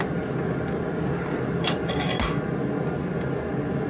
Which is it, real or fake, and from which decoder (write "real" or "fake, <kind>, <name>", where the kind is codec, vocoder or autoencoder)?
real